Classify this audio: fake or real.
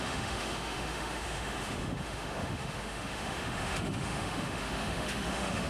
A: fake